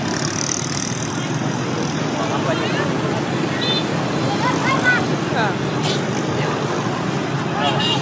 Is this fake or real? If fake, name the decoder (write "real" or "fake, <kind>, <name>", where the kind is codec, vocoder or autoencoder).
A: real